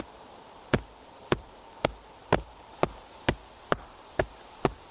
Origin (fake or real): real